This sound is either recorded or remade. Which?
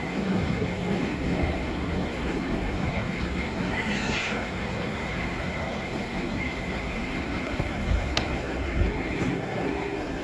remade